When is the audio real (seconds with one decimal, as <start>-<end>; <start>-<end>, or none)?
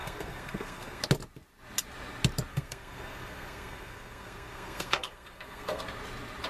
1.0-2.5; 5.8-6.5